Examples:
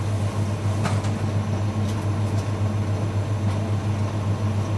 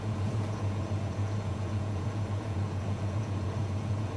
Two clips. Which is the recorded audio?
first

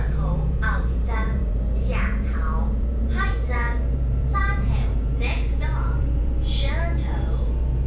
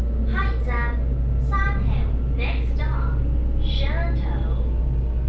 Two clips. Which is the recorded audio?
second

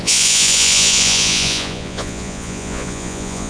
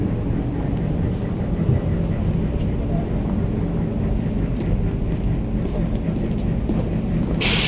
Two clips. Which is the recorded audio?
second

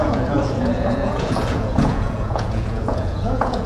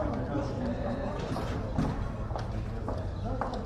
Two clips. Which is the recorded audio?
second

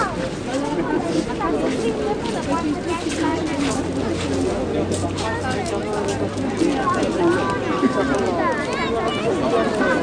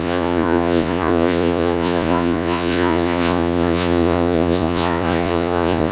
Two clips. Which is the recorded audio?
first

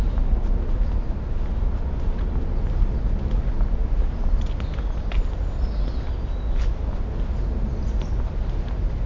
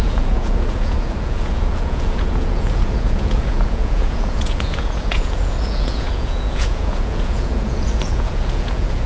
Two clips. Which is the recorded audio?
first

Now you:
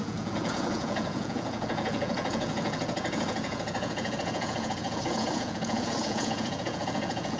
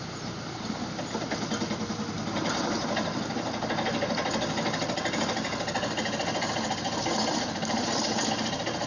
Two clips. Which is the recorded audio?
second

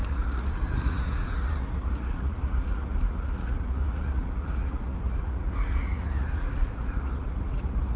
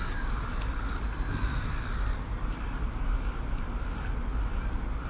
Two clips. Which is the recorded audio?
second